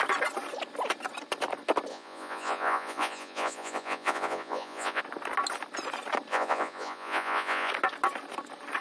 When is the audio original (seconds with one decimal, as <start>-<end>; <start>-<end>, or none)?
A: 0.0-1.9; 5.0-6.3; 7.7-8.8